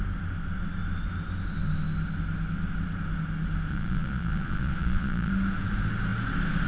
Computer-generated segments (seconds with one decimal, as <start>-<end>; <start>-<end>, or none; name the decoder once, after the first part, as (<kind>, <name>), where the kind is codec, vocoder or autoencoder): 3.7-5.3 (vocoder, Vocos)